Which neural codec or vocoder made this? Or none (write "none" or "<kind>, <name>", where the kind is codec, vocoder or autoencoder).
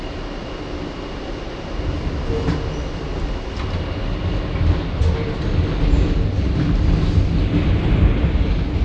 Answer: none